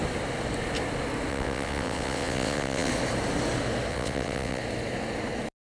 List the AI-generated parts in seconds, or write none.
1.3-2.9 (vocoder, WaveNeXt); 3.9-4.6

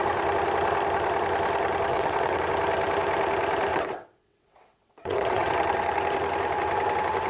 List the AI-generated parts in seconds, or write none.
1.9-2.4 (vocoder, WaveNeXt); 3.7-5.5

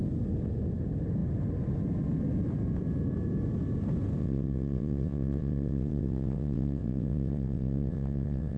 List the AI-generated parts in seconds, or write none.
4.2-8.6 (vocoder, WaveNeXt)